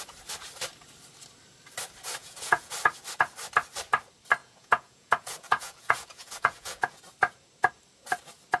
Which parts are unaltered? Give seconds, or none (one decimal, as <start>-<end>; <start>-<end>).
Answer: 0.0-2.2; 2.7-4.4; 7.0-8.6